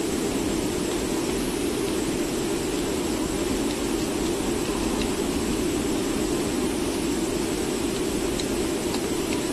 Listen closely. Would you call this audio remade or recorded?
recorded